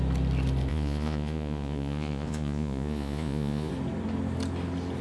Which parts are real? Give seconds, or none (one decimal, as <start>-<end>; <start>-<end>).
0.0-0.7; 3.7-5.0